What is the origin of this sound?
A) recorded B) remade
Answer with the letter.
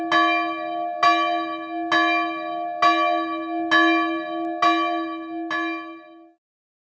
A